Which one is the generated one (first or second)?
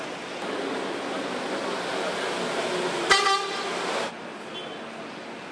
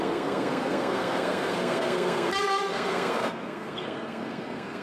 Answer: second